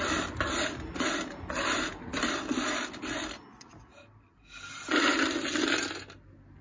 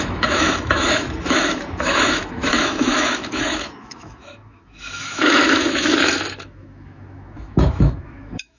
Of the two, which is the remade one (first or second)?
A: second